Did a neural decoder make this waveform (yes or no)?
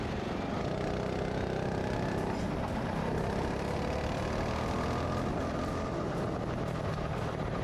no